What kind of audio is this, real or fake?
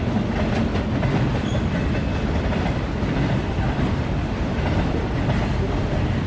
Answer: real